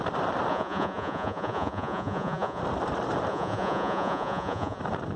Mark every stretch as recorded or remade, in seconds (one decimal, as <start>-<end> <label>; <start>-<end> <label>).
0.0-0.5 recorded; 0.5-2.6 remade; 2.6-3.3 recorded; 3.3-4.8 remade; 4.8-5.2 recorded